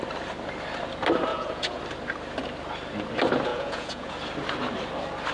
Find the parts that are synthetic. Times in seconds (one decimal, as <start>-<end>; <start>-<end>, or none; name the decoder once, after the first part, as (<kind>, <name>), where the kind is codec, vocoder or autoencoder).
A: 1.3-1.8 (vocoder, Vocos); 3.5-4.1